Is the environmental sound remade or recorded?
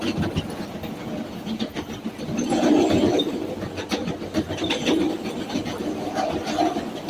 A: recorded